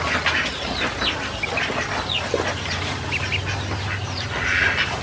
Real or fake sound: real